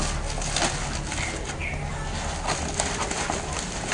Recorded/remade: recorded